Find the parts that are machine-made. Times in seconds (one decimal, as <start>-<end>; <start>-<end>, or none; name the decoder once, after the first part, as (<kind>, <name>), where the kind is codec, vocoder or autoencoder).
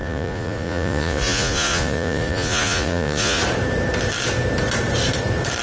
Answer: 0.0-3.4 (vocoder, Vocos)